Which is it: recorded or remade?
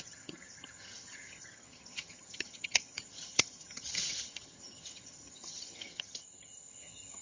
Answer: remade